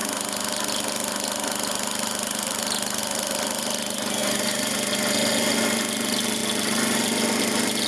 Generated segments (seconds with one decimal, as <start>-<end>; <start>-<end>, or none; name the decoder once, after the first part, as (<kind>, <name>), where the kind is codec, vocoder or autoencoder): none